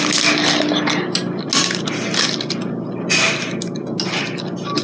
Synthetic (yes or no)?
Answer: no